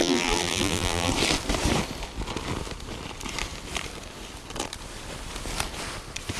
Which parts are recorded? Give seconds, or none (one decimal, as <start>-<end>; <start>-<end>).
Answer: 1.1-6.4